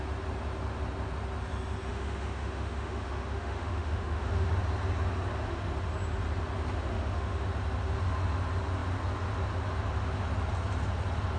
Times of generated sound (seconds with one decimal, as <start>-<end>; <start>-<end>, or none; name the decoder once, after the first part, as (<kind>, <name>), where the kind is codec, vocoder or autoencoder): 1.9-4.5 (autoencoder, DAC-VAE); 6.9-7.5